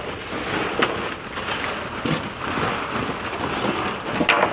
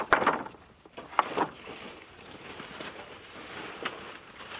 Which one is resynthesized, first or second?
second